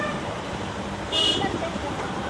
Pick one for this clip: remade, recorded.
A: remade